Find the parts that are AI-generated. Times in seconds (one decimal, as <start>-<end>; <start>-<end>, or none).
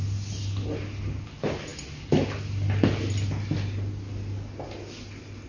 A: none